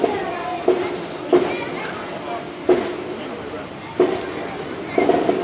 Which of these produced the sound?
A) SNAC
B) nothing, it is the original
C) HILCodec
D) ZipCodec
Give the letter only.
B